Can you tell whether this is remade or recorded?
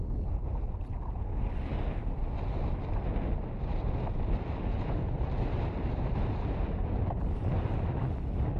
recorded